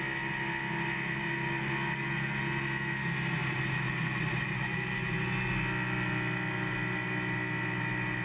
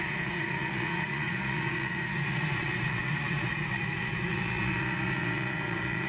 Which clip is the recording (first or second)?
first